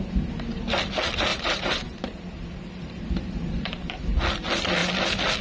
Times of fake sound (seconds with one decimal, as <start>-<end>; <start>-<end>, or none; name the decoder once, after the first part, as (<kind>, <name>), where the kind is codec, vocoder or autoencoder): 1.3-4.0 (vocoder, BigVGAN v2)